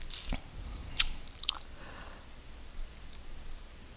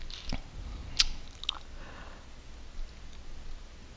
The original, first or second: second